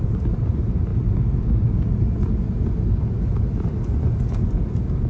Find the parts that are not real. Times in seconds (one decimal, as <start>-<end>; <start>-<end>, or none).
none